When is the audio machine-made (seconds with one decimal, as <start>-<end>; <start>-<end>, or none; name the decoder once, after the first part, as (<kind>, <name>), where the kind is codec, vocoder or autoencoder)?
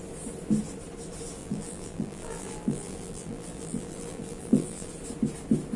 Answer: 1.4-4.9 (vocoder, BigVGAN v2)